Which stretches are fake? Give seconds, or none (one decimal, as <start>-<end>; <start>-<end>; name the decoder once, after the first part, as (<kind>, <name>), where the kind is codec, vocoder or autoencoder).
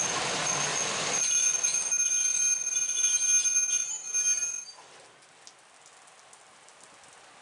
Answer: none